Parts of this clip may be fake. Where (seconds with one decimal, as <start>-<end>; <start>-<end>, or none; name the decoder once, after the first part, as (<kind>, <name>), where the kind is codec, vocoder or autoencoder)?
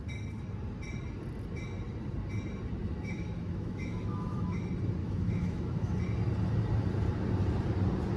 2.8-4.6 (autoencoder, DAC-VAE); 5.0-5.9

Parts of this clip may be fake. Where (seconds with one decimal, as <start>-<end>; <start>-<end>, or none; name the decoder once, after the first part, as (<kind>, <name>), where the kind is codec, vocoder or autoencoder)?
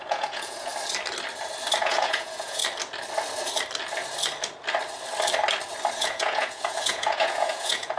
0.0-0.7 (vocoder, Vocos); 1.8-2.6; 5.9-8.0